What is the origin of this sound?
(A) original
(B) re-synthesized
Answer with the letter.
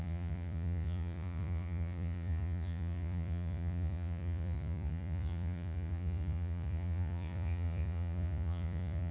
B